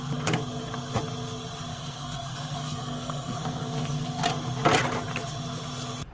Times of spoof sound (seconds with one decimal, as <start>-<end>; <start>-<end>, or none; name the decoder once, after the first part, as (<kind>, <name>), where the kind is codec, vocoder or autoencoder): 1.7-4.2 (codec, SNAC)